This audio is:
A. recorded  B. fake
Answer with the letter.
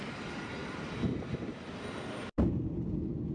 A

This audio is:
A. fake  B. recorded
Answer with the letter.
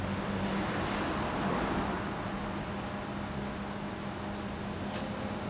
B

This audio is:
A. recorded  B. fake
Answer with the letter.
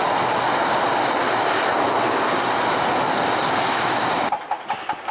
A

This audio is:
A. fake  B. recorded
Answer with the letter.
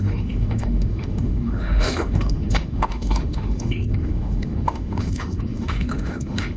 A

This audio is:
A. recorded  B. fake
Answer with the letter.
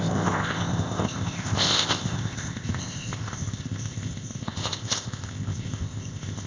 B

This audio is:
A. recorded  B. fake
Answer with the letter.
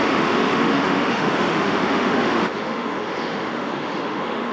B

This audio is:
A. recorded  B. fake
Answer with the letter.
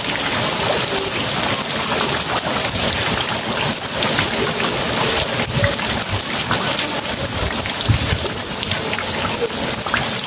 A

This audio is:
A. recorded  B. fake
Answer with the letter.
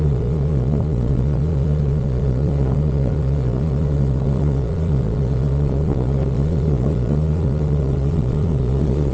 B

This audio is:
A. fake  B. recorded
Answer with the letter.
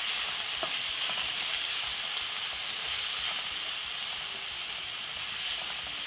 B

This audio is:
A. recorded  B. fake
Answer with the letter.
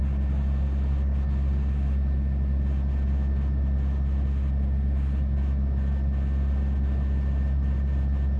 A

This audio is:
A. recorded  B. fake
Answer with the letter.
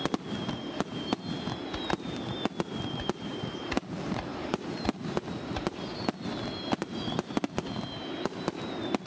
A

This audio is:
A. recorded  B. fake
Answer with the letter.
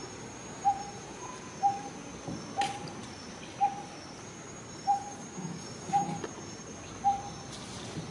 A